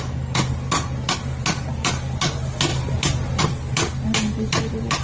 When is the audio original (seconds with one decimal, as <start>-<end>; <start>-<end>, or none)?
0.0-5.0